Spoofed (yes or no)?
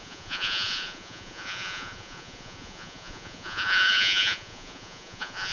yes